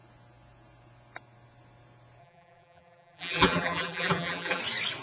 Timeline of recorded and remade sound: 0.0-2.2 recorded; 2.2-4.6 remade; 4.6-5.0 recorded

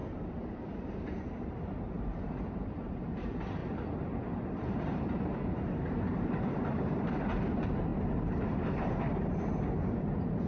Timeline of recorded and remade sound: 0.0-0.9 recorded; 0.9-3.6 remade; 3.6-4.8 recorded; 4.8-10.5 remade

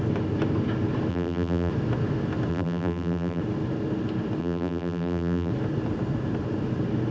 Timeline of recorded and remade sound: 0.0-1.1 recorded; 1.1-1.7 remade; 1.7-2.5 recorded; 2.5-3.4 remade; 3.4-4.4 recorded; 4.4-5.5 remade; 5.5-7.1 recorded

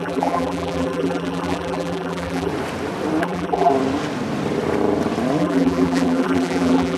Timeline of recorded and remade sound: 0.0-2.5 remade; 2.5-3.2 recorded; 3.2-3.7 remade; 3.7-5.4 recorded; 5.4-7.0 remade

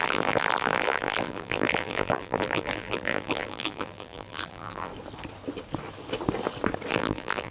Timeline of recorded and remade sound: 0.0-4.9 remade; 4.9-6.9 recorded; 6.9-7.5 remade